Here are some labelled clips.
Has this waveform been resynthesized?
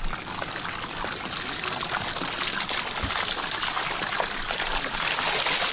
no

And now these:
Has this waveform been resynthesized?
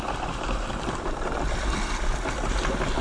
no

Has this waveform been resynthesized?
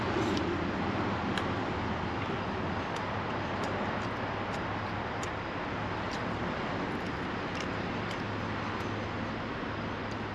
no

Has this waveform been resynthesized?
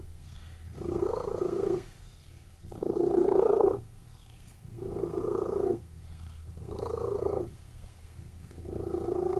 yes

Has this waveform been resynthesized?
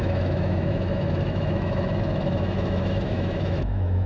yes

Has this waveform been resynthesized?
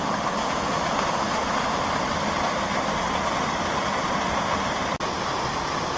no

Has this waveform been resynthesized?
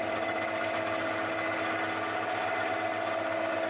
no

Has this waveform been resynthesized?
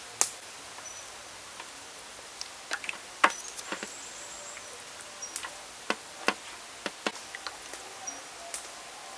no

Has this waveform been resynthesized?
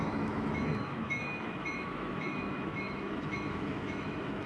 yes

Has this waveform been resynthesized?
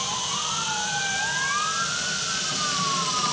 yes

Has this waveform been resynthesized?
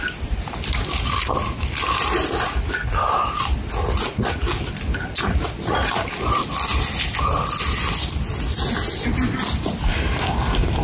no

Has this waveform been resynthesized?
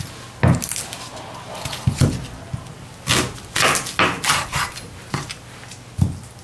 no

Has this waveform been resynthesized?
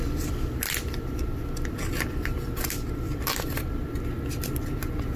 yes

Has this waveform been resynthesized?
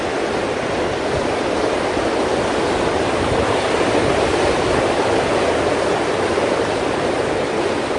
no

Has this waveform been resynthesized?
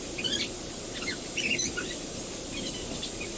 no